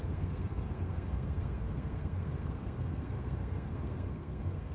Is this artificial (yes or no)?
yes